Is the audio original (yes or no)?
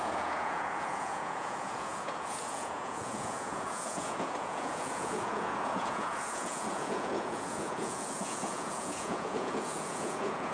no